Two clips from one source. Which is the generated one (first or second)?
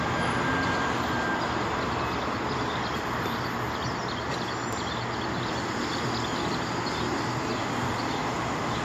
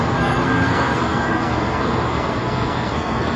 second